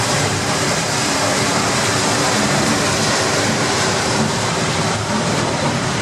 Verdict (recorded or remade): remade